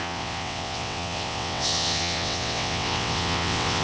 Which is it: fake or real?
fake